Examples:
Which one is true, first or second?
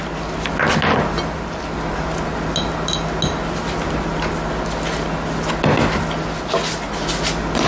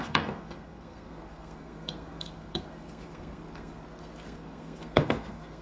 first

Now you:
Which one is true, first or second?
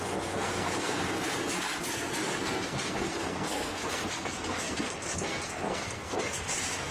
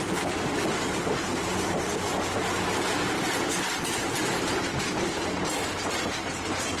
second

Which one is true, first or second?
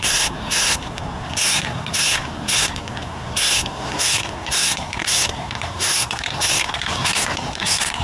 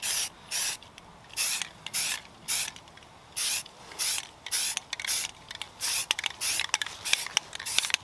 second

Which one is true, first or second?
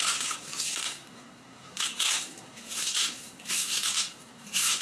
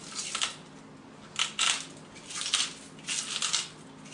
second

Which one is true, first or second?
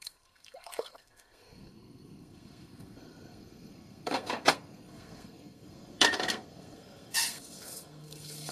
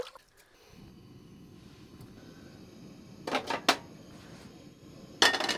second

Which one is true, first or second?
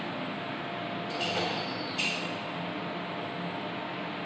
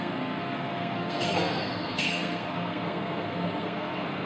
first